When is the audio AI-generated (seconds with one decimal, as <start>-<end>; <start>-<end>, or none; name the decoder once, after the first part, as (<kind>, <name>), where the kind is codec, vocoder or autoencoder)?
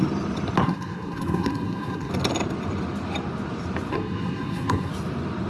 0.6-2.1 (codec, SNAC); 3.9-4.9